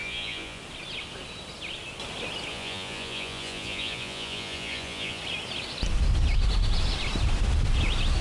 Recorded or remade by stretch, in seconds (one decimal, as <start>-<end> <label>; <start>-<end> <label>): 0.0-0.6 remade; 0.6-2.5 recorded; 2.5-5.2 remade; 5.2-8.2 recorded